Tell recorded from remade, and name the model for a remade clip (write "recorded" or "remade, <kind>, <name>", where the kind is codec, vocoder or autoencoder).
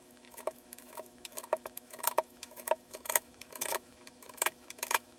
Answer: remade, autoencoder, DAC-VAE